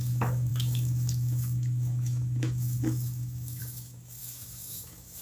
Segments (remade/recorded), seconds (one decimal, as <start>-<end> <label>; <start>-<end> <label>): 0.0-5.2 remade